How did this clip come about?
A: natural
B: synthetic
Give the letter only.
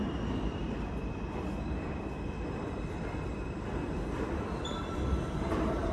A